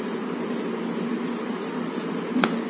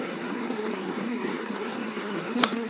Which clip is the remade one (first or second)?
second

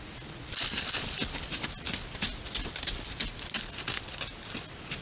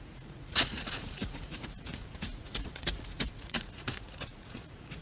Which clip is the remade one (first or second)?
second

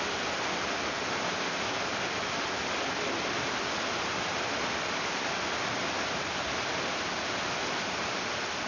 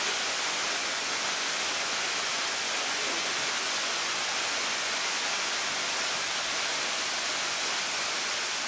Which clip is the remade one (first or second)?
second